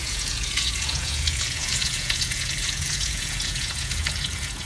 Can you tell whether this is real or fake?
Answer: fake